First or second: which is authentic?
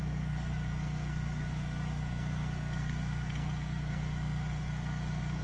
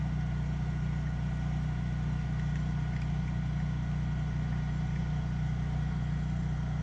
second